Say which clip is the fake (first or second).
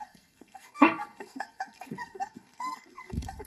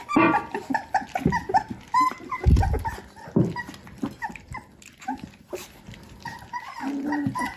first